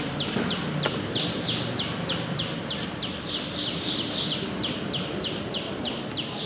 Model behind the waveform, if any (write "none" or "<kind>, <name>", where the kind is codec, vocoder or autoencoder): none